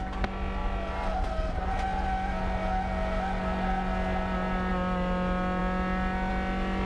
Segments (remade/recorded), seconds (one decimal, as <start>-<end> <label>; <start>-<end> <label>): 0.0-6.9 recorded